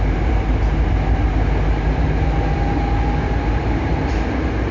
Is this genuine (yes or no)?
yes